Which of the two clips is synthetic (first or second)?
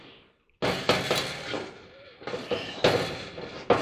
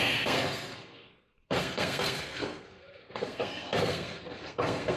second